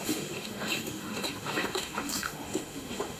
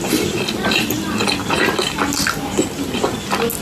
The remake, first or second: first